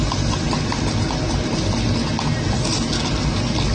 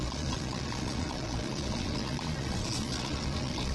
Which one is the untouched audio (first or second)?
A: first